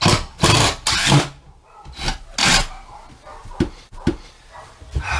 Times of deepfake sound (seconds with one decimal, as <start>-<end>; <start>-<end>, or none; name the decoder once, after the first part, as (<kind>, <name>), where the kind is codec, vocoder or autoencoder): none